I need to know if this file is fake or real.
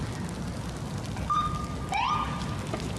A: real